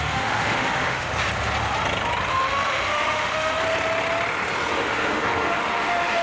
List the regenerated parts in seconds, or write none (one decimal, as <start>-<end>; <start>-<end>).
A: 0.0-1.1; 2.3-3.6; 4.7-6.2